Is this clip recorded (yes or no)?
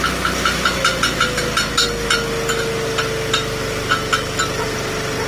yes